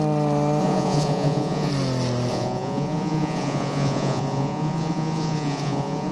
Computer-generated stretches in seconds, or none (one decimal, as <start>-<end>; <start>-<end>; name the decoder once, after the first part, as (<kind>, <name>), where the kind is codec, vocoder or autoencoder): 0.6-1.7 (vocoder, Vocos); 2.3-6.1